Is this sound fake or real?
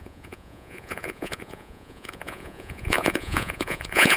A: fake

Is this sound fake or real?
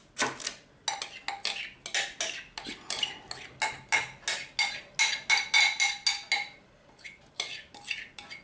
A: real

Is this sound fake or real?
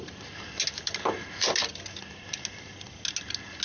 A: real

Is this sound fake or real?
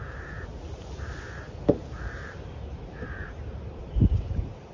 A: fake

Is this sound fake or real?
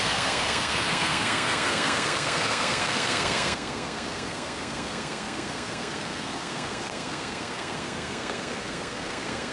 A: fake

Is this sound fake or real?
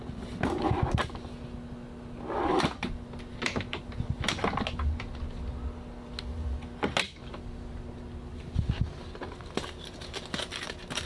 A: real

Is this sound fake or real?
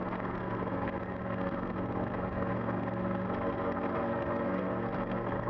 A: fake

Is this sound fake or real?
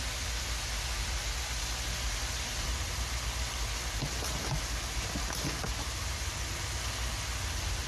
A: real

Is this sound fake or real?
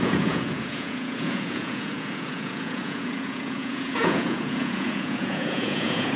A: fake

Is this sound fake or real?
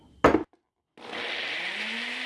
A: real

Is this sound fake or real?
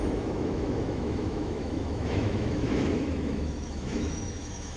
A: fake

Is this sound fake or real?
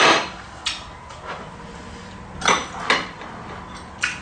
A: real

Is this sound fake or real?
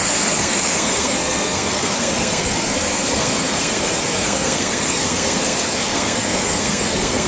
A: fake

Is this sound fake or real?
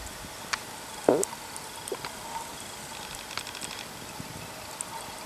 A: real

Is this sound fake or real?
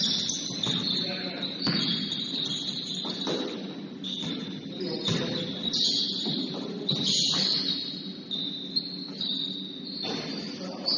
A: real